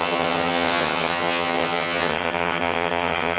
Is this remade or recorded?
remade